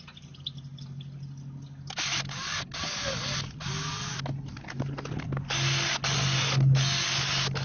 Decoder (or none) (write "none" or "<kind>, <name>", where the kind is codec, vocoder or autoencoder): none